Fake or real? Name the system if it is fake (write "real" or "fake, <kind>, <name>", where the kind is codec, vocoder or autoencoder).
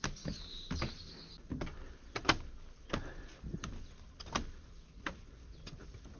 real